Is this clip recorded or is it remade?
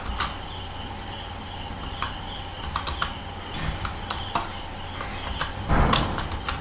recorded